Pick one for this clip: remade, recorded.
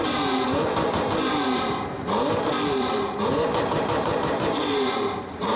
remade